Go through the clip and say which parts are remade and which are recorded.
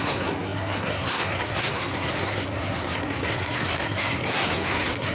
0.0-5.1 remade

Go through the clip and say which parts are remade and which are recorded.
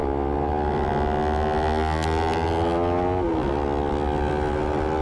0.0-0.9 remade; 0.9-3.9 recorded; 3.9-5.0 remade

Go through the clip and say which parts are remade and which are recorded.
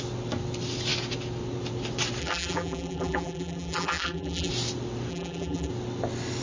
0.0-2.2 recorded; 2.2-4.5 remade; 4.5-5.1 recorded; 5.1-5.7 remade; 5.7-6.4 recorded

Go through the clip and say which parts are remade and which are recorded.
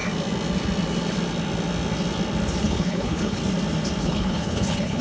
0.0-2.6 recorded; 2.6-3.4 remade; 3.4-4.0 recorded; 4.0-5.0 remade